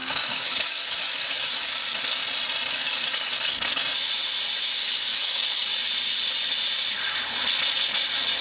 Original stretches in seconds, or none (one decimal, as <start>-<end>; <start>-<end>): 2.2-2.7; 3.8-4.6; 5.7-8.4